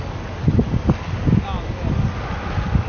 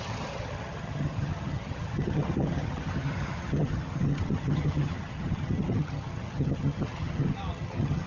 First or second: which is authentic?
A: first